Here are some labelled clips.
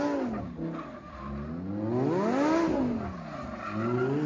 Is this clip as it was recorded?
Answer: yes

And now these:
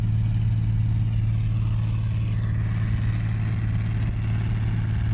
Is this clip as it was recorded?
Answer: yes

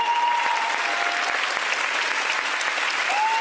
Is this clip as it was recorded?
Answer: yes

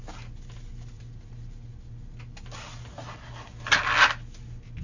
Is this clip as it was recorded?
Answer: yes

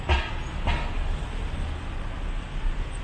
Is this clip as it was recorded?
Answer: yes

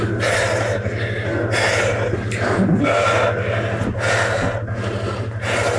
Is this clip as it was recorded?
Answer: yes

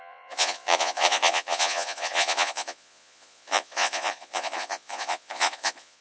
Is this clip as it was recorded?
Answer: no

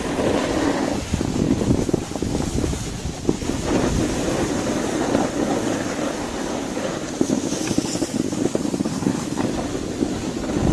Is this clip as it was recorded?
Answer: yes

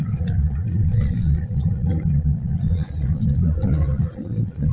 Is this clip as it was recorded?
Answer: no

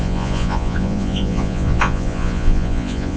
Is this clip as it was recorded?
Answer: no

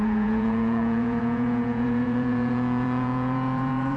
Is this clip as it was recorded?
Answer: no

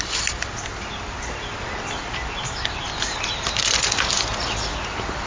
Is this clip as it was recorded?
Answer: yes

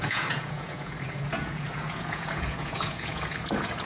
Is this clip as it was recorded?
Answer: no